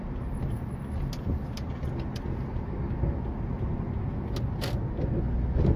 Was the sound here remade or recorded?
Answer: recorded